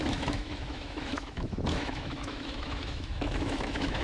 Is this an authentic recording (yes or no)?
no